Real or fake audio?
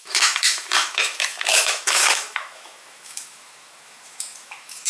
fake